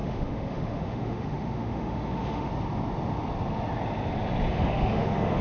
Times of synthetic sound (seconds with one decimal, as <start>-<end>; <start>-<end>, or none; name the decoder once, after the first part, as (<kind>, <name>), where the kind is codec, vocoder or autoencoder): 0.0-2.5 (autoencoder, DAC-VAE); 4.5-5.4